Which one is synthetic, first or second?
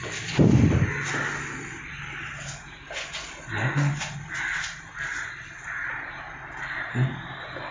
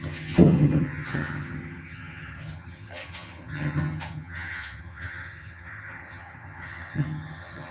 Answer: second